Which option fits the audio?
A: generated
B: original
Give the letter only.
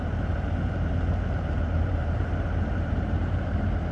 A